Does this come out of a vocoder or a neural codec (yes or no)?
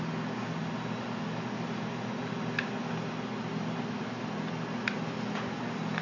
no